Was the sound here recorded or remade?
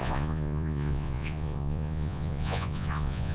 remade